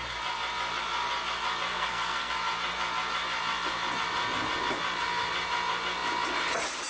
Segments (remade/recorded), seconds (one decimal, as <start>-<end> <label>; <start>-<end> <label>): 0.0-1.7 recorded; 1.7-2.3 remade; 2.3-6.9 recorded